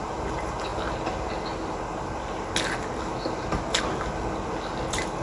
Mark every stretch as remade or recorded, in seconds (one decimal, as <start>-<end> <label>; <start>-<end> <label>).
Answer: 0.0-5.2 recorded